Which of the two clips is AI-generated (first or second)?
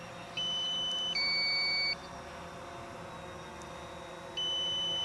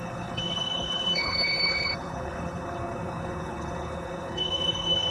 second